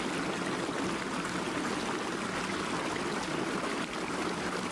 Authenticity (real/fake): real